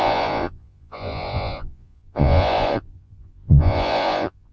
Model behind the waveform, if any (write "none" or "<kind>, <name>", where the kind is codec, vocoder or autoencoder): vocoder, Vocos